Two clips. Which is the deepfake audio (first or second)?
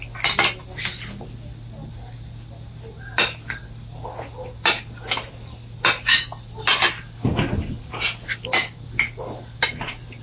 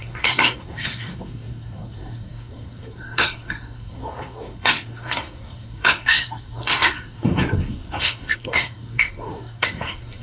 second